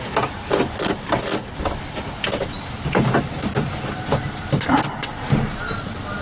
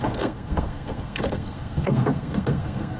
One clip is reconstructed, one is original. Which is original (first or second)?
first